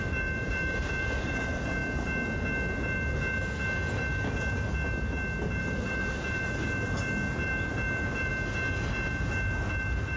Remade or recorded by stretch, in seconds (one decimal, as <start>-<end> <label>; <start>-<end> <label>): 0.0-1.8 remade; 1.8-5.6 recorded; 5.6-8.3 remade; 8.3-10.2 recorded